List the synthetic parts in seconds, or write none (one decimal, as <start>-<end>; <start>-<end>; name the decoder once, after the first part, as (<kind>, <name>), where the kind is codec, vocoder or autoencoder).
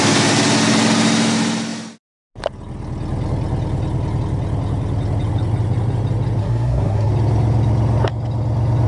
6.4-7.1 (codec, SNAC)